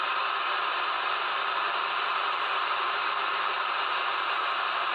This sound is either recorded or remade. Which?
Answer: remade